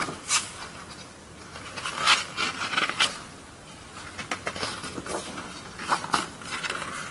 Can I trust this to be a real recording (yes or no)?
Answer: yes